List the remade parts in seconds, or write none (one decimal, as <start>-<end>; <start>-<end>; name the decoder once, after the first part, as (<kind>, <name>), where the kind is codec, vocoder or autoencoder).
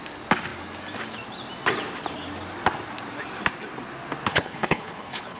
4.3-5.4 (codec, HILCodec)